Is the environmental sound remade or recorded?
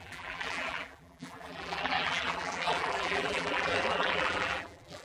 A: remade